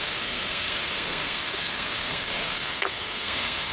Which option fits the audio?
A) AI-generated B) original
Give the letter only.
A